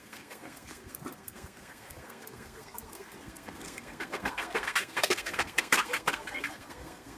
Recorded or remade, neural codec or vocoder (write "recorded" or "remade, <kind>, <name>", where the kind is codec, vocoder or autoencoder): remade, codec, SNAC